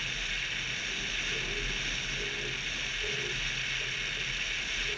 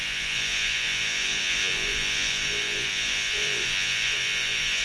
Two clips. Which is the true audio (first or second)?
first